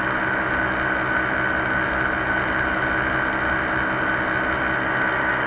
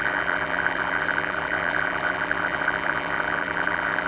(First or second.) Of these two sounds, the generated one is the second